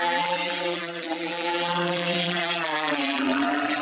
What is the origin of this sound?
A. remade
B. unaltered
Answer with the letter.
A